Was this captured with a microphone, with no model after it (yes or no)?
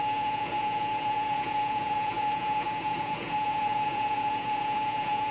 no